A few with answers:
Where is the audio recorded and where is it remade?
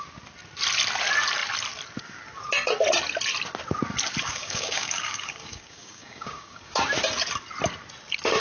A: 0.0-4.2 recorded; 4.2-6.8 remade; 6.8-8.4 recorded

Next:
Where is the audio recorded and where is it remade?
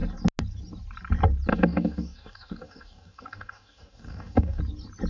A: 0.0-1.5 recorded; 1.5-4.6 remade; 4.6-5.1 recorded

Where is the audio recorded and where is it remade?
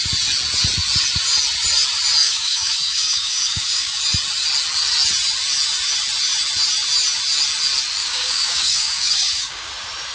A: 0.0-2.2 recorded; 2.2-4.0 remade; 4.0-8.0 recorded; 8.0-9.7 remade; 9.7-10.1 recorded